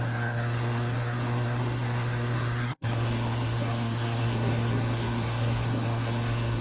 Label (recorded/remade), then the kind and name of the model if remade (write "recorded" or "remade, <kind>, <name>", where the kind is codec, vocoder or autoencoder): remade, codec, SNAC